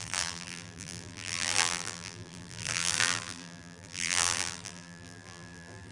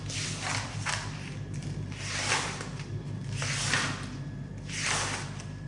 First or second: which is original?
second